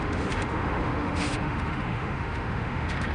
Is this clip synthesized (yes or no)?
yes